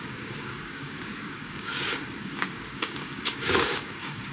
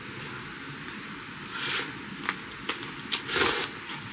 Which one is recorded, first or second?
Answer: second